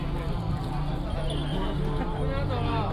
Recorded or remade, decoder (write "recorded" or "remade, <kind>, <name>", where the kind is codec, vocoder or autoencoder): recorded